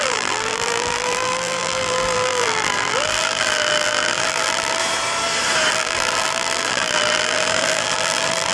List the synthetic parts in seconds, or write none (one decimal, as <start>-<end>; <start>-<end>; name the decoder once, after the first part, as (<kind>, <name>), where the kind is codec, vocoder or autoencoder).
0.0-4.8 (vocoder, BigVGAN v2); 5.7-8.5